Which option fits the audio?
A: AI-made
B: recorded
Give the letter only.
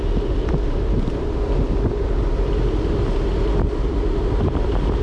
B